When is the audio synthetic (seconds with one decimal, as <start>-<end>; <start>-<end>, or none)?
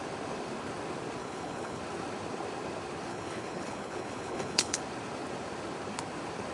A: 1.2-1.8; 3.1-4.8